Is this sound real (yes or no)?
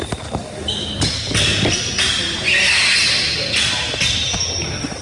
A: yes